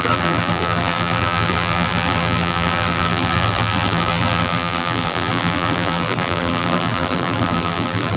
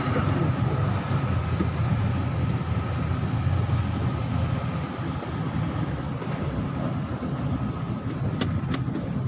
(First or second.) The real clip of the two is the second